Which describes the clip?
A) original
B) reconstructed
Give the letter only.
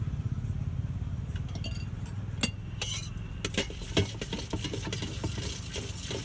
A